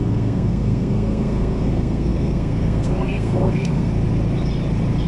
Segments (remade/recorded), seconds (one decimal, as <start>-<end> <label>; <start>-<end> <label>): 0.0-3.9 remade; 3.9-5.1 recorded